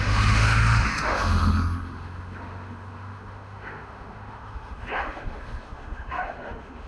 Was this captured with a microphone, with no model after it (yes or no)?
no